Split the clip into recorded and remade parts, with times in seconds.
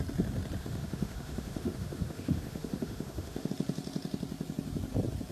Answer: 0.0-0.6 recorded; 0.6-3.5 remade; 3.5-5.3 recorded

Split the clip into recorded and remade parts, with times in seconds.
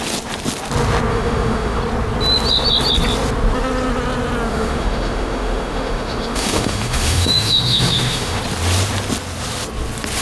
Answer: 0.0-1.1 recorded; 1.1-1.8 remade; 1.8-4.5 recorded; 4.5-8.4 remade; 8.4-10.2 recorded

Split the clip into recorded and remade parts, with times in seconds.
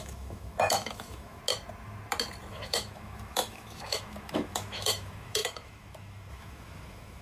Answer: 0.0-1.4 remade; 1.4-2.5 recorded; 2.5-7.2 remade